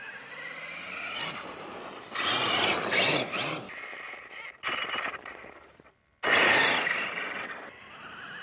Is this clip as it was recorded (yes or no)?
yes